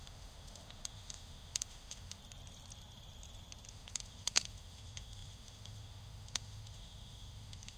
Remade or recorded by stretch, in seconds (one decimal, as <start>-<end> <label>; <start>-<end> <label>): 0.0-2.2 remade; 2.2-3.7 recorded; 3.7-7.8 remade